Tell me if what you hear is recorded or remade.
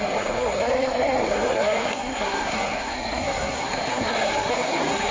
remade